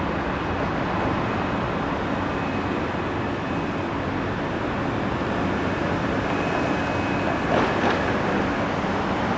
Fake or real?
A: real